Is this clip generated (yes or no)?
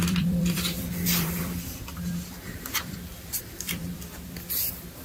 yes